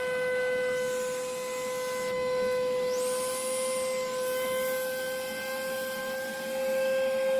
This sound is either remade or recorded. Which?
recorded